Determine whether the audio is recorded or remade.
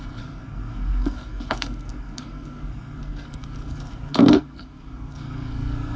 remade